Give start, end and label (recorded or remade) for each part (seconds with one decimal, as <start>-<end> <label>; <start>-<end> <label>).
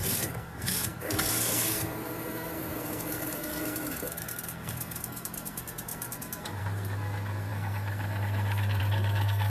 0.0-9.5 remade